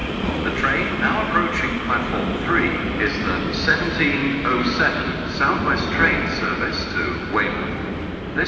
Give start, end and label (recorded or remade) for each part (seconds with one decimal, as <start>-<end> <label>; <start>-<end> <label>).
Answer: 0.0-0.6 remade; 0.6-8.5 recorded